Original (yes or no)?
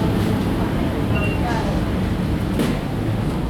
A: yes